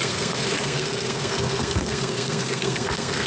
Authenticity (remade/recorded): remade